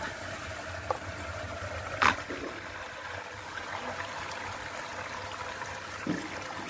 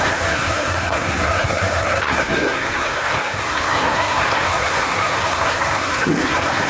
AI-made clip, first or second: second